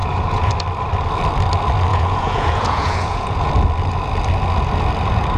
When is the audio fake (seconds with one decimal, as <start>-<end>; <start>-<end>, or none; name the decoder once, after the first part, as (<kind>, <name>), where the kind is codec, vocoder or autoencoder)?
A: 0.0-0.5 (vocoder, Vocos); 1.9-3.5